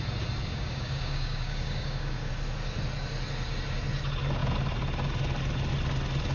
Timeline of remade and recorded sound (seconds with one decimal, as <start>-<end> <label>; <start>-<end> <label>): 0.0-0.5 recorded; 0.5-2.3 remade; 2.3-6.3 recorded